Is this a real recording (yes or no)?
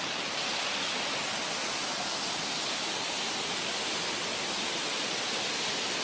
yes